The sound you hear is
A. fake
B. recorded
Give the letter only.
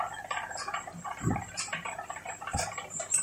A